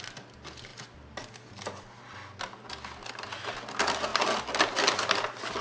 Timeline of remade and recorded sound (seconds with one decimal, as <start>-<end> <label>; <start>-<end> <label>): 0.0-5.6 recorded